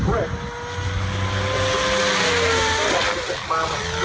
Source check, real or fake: real